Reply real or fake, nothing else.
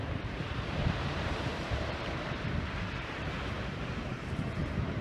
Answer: fake